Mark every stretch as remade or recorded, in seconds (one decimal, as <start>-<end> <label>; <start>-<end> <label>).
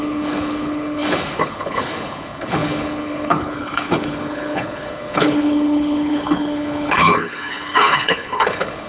0.0-8.9 remade